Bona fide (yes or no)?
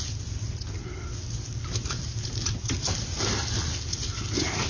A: yes